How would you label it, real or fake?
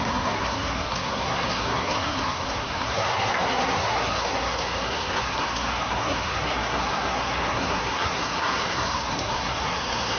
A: fake